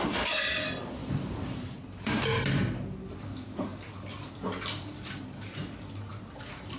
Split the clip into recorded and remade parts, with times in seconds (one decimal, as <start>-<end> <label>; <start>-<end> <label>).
0.0-1.0 recorded; 1.0-2.2 remade; 2.2-6.1 recorded; 6.1-6.8 remade